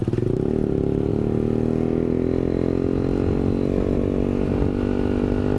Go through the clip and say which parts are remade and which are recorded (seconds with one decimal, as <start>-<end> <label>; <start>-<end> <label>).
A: 0.0-5.6 recorded